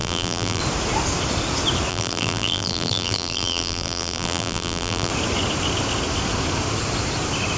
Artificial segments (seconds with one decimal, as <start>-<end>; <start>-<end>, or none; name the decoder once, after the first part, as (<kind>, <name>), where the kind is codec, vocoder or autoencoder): 0.0-0.6 (vocoder, BigVGAN v2); 1.9-5.1